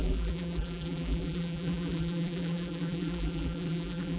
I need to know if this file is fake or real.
fake